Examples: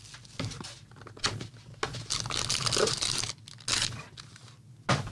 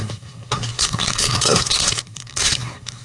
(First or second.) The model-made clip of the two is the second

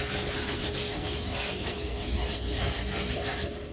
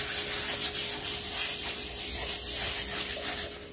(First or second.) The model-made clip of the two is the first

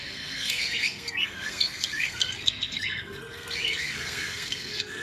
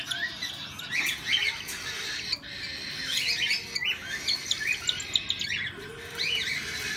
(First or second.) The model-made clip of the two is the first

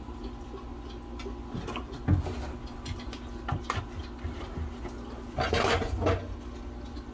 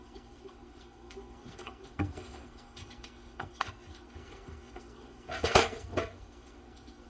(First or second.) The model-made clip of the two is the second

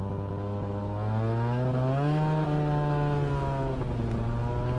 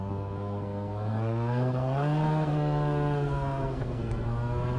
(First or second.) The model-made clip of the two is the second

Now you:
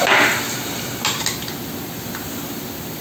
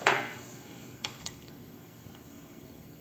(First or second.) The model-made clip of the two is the second